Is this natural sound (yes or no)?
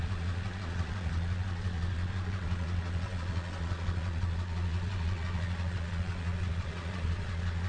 no